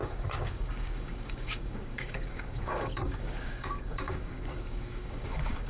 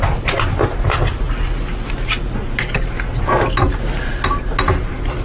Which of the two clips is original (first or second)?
second